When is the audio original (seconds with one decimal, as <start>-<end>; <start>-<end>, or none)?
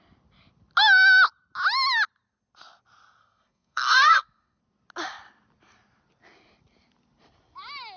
0.0-3.2; 4.6-8.0